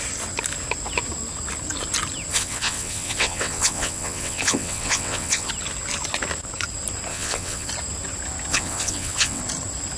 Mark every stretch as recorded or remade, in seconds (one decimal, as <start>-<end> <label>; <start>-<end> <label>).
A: 0.0-2.3 recorded; 2.3-5.5 remade; 5.5-7.1 recorded; 7.1-7.7 remade; 7.7-8.5 recorded; 8.5-9.4 remade; 9.4-10.0 recorded